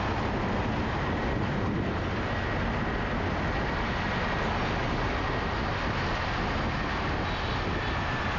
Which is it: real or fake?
real